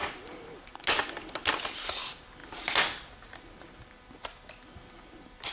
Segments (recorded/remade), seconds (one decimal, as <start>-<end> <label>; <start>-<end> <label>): 0.0-5.5 recorded

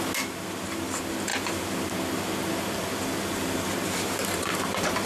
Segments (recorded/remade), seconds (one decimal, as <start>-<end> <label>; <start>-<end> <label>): 0.0-5.1 recorded

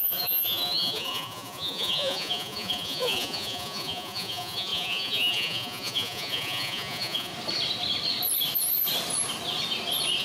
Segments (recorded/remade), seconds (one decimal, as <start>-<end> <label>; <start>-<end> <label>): 0.0-7.3 remade; 7.3-10.2 recorded

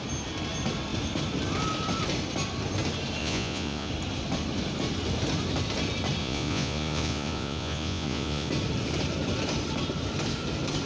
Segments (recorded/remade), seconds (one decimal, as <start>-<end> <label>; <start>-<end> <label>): 0.0-3.2 recorded; 3.2-3.9 remade; 3.9-6.2 recorded; 6.2-8.5 remade; 8.5-10.9 recorded

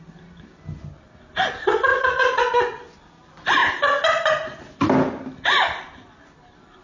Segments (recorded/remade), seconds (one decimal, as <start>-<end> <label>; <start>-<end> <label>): 0.0-1.9 recorded; 1.9-2.4 remade; 2.4-6.8 recorded

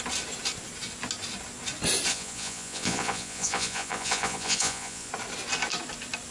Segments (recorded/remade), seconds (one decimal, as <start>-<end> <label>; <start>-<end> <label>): 0.0-2.1 recorded; 2.1-5.1 remade; 5.1-6.3 recorded